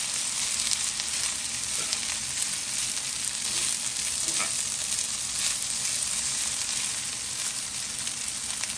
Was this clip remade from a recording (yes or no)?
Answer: no